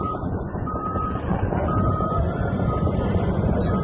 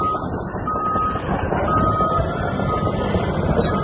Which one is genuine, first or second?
second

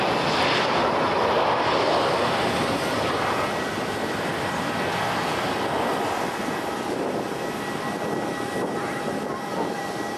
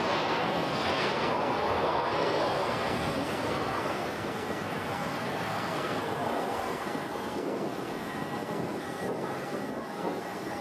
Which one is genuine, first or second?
first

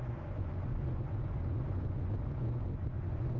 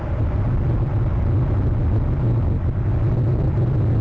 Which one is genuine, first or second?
second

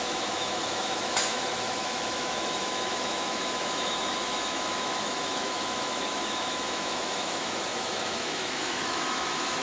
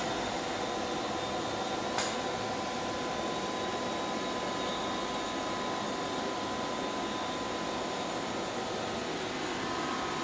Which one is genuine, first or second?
second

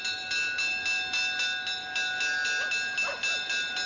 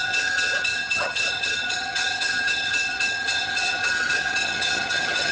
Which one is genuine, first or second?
first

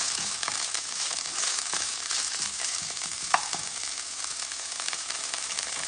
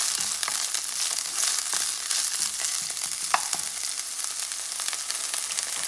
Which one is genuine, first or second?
second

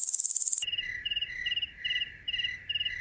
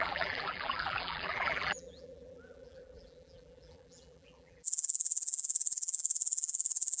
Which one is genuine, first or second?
first